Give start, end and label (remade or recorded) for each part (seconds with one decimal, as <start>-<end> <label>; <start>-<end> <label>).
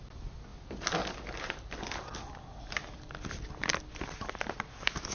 0.0-5.1 recorded